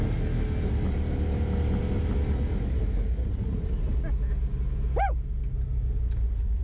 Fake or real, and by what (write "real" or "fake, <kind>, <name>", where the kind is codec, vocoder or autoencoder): real